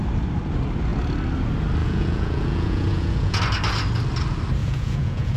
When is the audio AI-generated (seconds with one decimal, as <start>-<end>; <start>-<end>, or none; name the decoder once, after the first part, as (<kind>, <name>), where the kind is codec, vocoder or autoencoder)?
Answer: 1.8-3.4 (vocoder, Vocos); 4.6-5.4